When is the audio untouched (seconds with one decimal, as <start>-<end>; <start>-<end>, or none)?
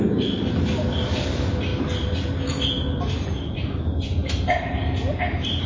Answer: 0.0-5.7